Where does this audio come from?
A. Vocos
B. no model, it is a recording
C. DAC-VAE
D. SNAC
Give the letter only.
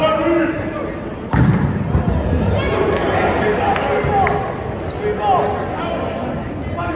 B